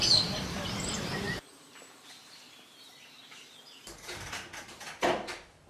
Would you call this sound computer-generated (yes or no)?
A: yes